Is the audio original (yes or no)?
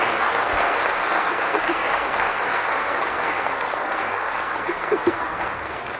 no